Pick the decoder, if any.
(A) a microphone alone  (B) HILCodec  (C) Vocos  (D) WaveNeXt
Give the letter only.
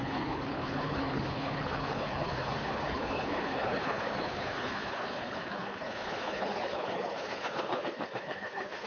B